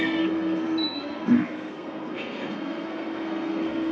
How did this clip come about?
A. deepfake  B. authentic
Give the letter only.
A